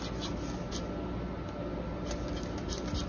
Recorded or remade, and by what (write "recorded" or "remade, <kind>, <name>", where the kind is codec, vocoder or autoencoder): recorded